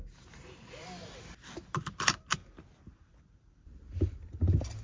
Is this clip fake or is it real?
real